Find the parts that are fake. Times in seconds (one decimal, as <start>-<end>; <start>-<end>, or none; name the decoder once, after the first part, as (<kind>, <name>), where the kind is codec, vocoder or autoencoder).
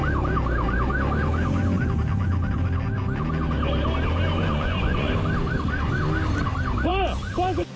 4.5-5.1 (vocoder, Vocos)